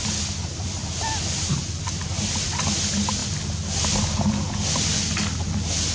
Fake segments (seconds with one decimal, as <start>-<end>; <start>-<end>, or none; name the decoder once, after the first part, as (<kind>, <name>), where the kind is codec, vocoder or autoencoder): none

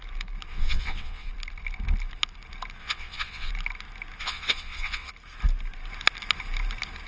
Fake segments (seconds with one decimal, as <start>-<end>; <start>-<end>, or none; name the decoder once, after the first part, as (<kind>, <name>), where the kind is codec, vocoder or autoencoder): 0.5-1.3 (vocoder, WaveNeXt); 2.8-3.5; 4.2-5.1

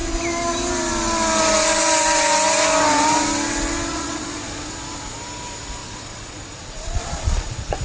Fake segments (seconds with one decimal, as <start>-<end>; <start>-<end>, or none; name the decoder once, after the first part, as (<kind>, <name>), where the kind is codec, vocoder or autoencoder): 3.9-4.7 (vocoder, Vocos); 5.8-7.8

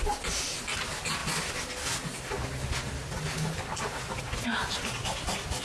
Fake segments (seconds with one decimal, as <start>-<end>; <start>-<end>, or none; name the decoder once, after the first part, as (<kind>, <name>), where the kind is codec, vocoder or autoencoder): none

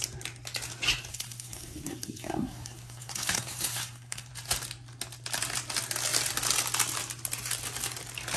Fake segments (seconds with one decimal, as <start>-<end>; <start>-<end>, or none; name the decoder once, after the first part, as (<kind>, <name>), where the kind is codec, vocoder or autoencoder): 1.1-4.3 (codec, SNAC)

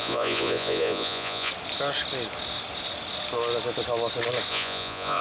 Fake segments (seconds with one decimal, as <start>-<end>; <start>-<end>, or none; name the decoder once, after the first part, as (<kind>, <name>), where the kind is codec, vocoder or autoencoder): 0.0-1.5 (vocoder, Vocos); 4.5-5.2